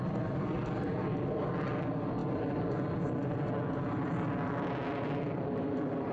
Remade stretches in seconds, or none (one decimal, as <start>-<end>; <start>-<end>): none